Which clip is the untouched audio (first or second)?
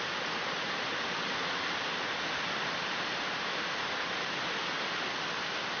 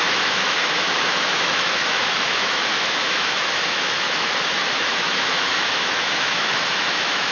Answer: first